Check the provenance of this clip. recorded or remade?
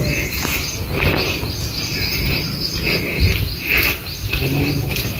recorded